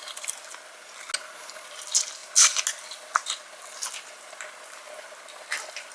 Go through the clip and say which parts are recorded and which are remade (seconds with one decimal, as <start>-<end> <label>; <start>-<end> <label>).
0.0-5.9 recorded